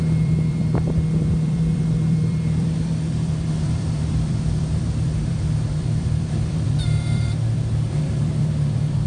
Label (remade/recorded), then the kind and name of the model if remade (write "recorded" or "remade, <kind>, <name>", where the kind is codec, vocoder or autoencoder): remade, vocoder, BigVGAN v2